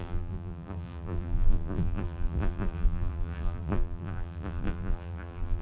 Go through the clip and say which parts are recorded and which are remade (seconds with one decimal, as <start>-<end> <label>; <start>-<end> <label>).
0.0-5.6 remade